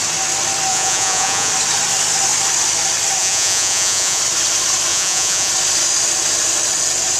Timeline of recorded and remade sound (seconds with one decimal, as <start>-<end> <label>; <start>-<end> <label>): 0.0-0.7 recorded; 0.7-1.5 remade; 1.5-3.2 recorded; 3.2-4.2 remade; 4.2-4.9 recorded; 4.9-5.5 remade; 5.5-7.2 recorded